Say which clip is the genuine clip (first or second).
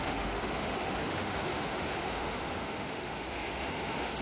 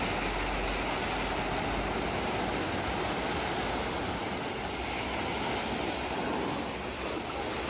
second